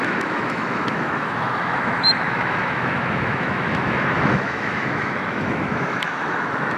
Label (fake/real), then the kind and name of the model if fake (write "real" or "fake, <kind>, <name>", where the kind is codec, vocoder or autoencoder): fake, autoencoder, DAC-VAE